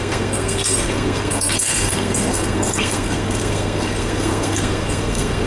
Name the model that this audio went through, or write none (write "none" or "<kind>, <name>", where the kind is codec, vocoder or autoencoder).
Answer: codec, SNAC